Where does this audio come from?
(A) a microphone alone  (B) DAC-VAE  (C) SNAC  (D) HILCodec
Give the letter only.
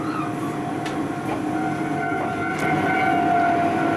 A